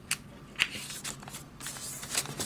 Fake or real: real